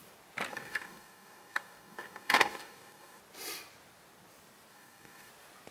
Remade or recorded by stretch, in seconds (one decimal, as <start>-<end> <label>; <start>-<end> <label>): 0.0-0.5 recorded; 0.5-3.2 remade; 3.2-4.7 recorded; 4.7-5.3 remade; 5.3-5.7 recorded